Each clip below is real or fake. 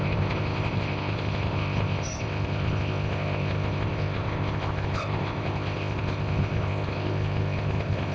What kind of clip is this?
fake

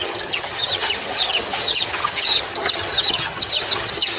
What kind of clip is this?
fake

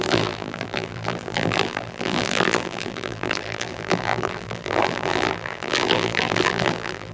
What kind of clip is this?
fake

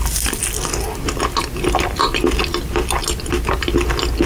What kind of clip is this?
real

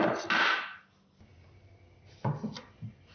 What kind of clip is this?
real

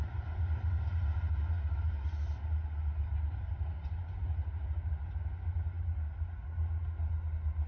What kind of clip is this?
real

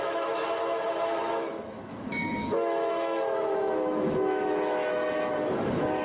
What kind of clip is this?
fake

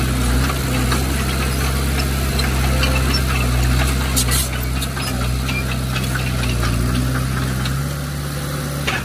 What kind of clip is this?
real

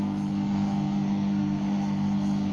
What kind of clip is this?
fake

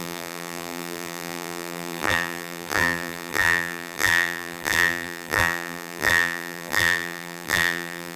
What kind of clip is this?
fake